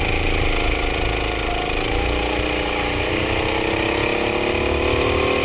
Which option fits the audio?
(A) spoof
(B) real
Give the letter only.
B